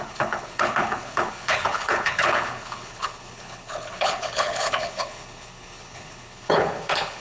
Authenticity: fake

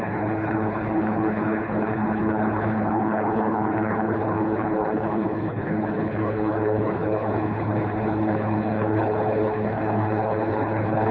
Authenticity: fake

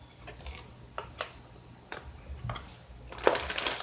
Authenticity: real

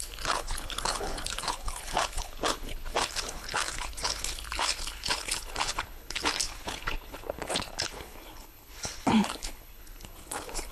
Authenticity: fake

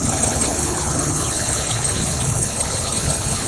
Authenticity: fake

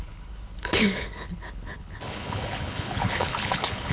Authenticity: fake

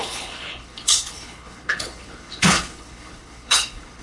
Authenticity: fake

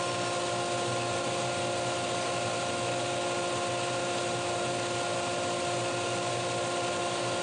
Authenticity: real